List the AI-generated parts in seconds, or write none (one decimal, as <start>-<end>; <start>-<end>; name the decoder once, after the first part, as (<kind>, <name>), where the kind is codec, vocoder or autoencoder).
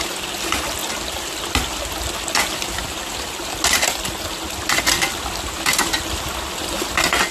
none